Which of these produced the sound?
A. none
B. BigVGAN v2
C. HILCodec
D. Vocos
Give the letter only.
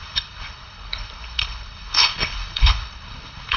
C